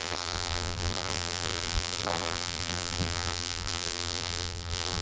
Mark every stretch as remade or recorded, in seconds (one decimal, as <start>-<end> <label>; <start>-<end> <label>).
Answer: 0.0-5.0 remade